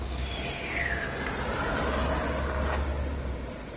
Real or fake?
real